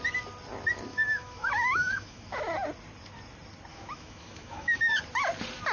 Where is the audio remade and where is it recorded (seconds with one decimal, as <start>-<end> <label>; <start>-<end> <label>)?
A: 0.0-0.9 recorded; 0.9-2.5 remade; 2.5-3.7 recorded; 3.7-5.0 remade; 5.0-5.7 recorded